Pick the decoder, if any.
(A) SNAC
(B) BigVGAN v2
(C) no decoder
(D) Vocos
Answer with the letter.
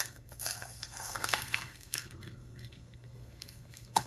A